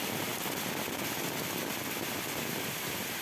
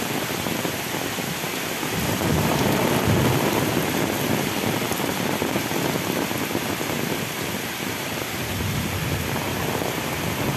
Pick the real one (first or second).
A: first